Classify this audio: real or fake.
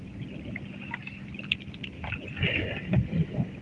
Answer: real